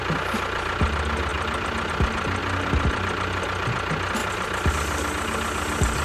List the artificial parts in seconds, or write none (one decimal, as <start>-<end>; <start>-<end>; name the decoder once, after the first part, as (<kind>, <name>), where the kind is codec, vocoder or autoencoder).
1.3-1.9 (vocoder, BigVGAN v2); 2.4-3.4; 4.2-4.7

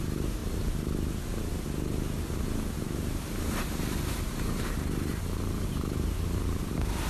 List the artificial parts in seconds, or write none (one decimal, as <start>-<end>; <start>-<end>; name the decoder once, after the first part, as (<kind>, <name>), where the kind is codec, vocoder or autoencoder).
0.0-0.4 (vocoder, BigVGAN v2); 2.8-5.1; 5.6-7.1

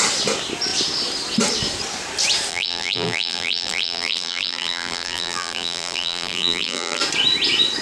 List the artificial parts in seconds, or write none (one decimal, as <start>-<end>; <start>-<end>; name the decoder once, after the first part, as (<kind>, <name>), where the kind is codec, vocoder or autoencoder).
2.5-7.0 (vocoder, BigVGAN v2)